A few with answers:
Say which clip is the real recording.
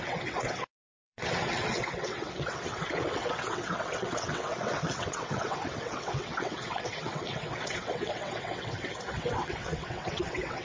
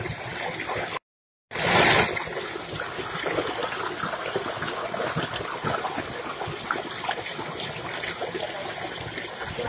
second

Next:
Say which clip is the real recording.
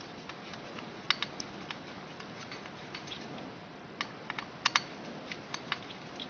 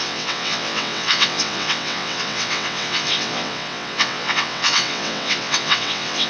first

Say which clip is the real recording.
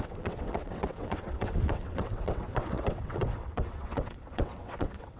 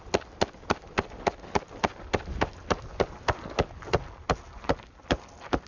second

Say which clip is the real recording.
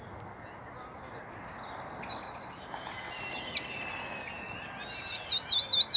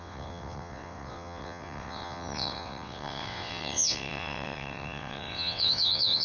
first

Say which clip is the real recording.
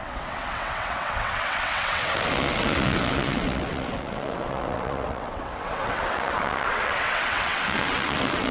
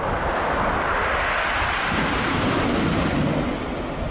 second